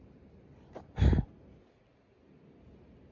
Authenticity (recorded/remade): recorded